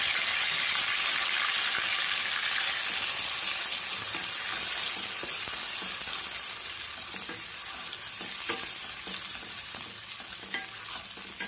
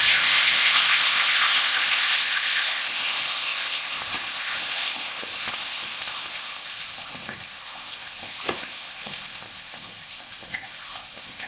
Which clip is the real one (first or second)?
first